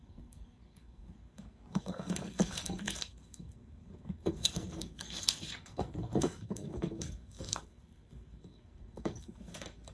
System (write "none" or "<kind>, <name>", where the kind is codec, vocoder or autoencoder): codec, SNAC